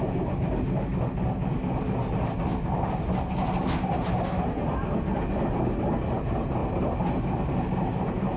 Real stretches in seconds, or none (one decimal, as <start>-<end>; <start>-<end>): 0.9-5.9; 6.6-8.0